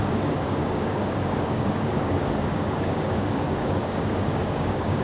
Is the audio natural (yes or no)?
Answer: no